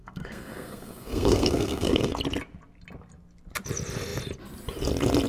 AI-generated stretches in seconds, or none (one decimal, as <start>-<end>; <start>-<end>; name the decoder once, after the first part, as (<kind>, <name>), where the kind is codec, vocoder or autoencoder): 0.0-2.1 (codec, SNAC)